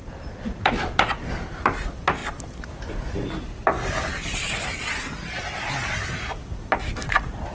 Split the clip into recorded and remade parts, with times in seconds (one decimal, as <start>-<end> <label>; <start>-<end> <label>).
0.0-7.5 recorded

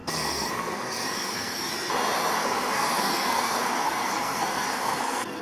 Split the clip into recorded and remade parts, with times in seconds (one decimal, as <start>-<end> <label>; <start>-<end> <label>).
0.0-1.7 remade; 1.7-2.4 recorded; 2.4-5.4 remade

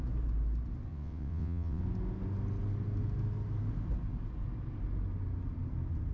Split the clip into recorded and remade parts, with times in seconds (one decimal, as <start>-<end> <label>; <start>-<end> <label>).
0.0-0.9 recorded; 0.9-1.8 remade; 1.8-6.1 recorded

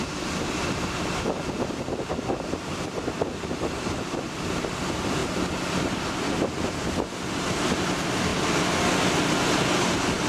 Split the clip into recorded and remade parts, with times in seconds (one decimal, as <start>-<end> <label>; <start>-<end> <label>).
0.0-10.3 recorded

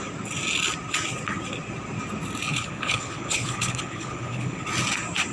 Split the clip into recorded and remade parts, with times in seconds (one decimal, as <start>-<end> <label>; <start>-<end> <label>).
0.0-2.5 recorded; 2.5-4.7 remade; 4.7-5.3 recorded

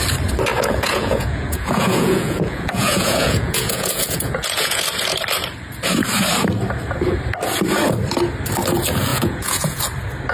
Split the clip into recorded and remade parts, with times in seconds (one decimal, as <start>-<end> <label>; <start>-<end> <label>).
0.0-0.5 recorded; 0.5-4.8 remade; 4.8-9.1 recorded; 9.1-9.8 remade; 9.8-10.3 recorded

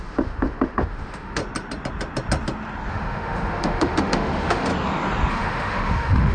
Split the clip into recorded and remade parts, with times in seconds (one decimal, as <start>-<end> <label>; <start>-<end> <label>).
0.0-1.4 remade; 1.4-2.9 recorded; 2.9-4.7 remade; 4.7-5.3 recorded; 5.3-6.3 remade